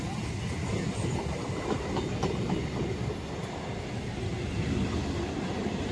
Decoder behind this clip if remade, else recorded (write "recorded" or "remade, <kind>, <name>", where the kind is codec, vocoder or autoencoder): recorded